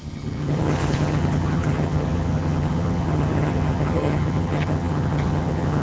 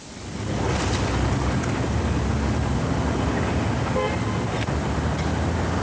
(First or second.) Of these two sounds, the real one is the second